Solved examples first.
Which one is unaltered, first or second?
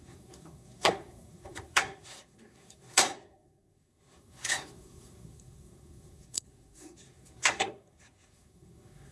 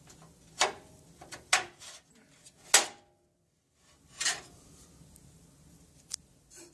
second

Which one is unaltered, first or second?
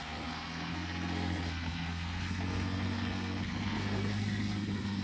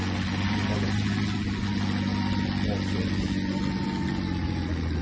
second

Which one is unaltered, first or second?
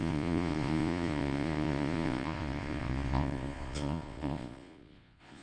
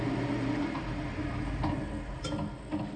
second